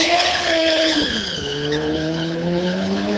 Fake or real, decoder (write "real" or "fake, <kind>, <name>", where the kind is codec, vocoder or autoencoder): fake, codec, HILCodec